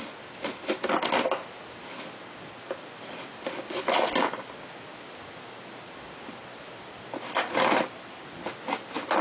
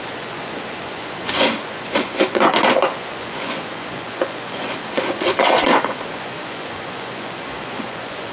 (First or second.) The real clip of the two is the first